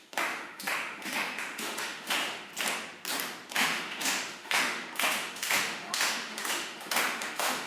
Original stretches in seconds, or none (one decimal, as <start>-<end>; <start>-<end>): 2.5-3.5